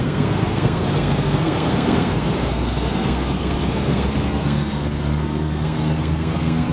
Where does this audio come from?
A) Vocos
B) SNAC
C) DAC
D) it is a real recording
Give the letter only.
B